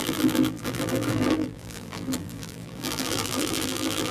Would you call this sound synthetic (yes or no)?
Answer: yes